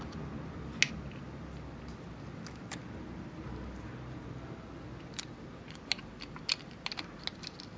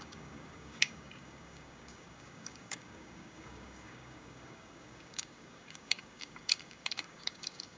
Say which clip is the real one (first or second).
first